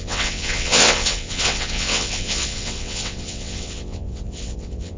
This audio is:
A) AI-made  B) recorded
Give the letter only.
A